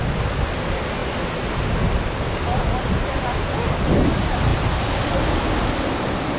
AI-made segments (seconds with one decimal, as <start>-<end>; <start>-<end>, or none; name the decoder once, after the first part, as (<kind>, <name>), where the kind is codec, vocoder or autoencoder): none